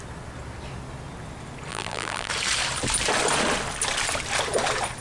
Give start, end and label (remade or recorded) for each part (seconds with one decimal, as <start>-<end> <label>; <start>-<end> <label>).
0.0-1.7 recorded; 1.7-2.3 remade; 2.3-5.0 recorded